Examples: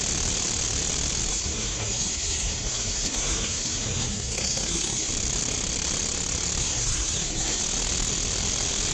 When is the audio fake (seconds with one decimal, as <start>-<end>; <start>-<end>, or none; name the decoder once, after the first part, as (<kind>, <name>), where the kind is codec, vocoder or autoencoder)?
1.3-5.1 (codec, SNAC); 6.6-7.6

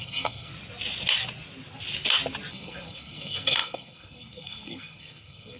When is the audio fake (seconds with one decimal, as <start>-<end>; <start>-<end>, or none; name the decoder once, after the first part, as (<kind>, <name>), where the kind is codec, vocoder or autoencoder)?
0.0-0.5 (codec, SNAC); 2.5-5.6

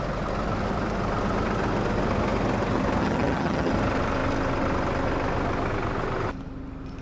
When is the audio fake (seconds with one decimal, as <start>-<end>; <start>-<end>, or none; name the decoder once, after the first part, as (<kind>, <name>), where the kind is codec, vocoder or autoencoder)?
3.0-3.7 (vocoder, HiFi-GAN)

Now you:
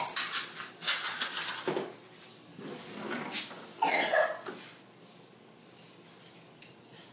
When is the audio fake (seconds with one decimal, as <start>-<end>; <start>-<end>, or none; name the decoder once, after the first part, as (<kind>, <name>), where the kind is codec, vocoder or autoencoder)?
none